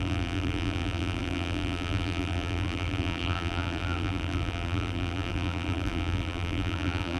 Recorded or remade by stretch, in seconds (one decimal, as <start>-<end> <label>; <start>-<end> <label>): 0.0-7.2 remade

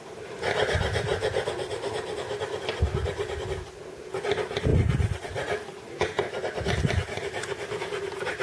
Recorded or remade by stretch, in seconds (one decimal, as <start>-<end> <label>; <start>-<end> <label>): 0.0-8.4 recorded

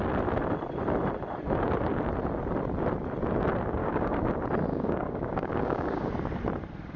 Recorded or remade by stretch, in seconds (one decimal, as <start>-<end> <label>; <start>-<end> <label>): 0.0-3.8 recorded; 3.8-4.3 remade; 4.3-4.7 recorded; 4.7-6.1 remade; 6.1-7.0 recorded

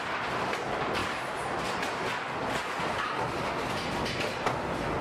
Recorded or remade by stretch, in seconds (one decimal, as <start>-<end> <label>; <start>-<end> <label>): 0.0-1.0 recorded; 1.0-1.6 remade; 1.6-5.0 recorded

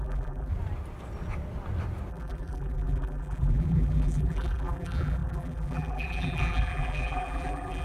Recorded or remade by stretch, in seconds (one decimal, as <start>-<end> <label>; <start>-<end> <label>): 0.0-0.5 remade; 0.5-2.1 recorded; 2.1-7.8 remade

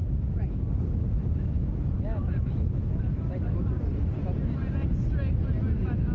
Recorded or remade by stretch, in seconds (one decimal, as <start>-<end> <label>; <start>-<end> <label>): 0.0-3.7 remade; 3.7-6.1 recorded

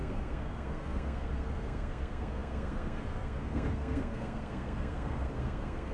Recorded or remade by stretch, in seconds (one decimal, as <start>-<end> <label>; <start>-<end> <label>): 0.0-5.9 remade

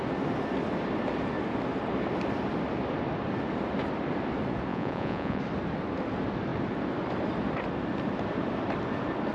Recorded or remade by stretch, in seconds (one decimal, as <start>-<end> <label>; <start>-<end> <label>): 0.0-4.7 recorded; 4.7-5.4 remade; 5.4-9.3 recorded